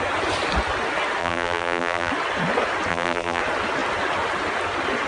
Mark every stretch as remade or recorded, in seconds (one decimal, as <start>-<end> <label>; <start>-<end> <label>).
0.0-1.2 recorded; 1.2-2.1 remade; 2.1-2.9 recorded; 2.9-3.4 remade; 3.4-5.1 recorded